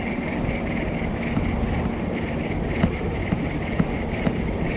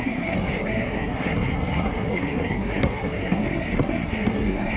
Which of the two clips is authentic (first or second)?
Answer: first